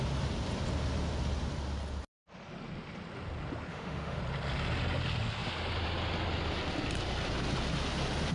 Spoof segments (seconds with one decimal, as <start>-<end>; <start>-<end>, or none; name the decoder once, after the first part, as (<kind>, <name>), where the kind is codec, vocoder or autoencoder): 3.7-4.2 (autoencoder, DAC-VAE)

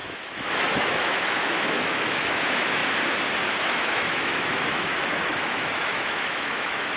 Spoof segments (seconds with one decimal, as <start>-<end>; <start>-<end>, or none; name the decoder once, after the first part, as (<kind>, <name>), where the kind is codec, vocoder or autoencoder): 0.0-2.8 (autoencoder, DAC-VAE); 3.6-7.0

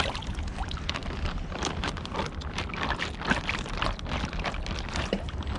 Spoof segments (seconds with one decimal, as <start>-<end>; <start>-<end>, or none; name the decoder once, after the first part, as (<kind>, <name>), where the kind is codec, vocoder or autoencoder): none

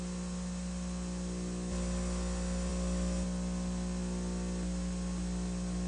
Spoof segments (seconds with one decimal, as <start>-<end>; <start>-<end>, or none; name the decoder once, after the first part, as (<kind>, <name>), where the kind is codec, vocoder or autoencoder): none

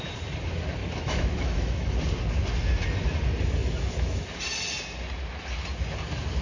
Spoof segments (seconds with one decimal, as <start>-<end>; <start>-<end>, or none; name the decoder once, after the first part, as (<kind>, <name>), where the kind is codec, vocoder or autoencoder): 0.8-1.9 (autoencoder, DAC-VAE); 3.6-4.4

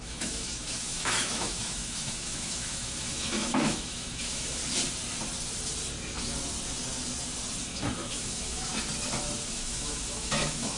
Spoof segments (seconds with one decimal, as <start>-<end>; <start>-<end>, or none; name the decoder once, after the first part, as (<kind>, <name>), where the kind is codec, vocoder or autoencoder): 0.0-4.6 (autoencoder, DAC-VAE); 7.6-8.7; 9.5-10.8

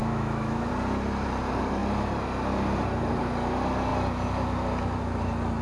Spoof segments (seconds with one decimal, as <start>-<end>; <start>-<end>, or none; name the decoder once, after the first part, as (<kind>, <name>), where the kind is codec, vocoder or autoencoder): 0.0-0.7 (autoencoder, DAC-VAE)